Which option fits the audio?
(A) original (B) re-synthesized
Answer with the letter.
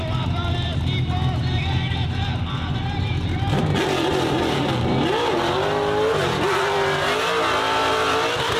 A